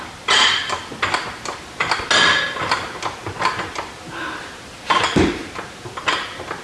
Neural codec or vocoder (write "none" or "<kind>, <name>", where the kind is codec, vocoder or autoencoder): none